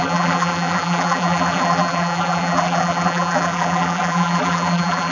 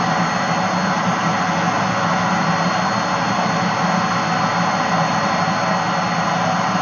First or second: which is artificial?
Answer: first